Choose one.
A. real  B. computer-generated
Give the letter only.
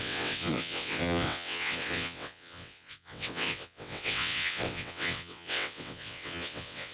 B